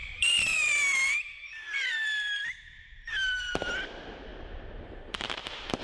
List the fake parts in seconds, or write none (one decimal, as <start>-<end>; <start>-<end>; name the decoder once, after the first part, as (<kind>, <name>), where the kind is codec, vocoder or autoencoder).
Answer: 0.0-3.4 (vocoder, BigVGAN v2); 4.3-5.8